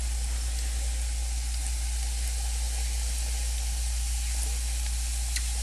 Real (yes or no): yes